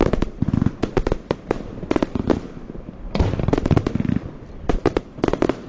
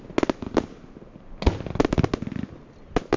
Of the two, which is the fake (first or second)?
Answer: first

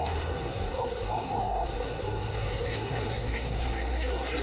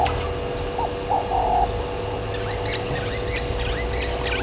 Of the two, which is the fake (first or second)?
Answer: first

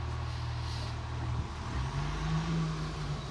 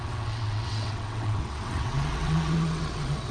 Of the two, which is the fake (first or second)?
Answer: second